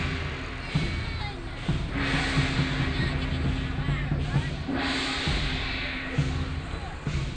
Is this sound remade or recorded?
recorded